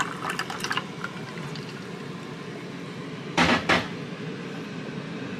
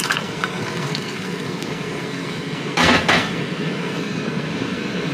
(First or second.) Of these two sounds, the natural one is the first